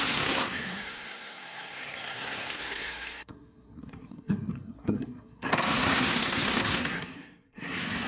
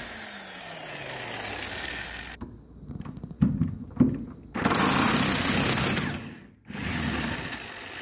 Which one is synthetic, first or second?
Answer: first